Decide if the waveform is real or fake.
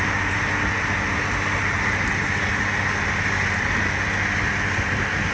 real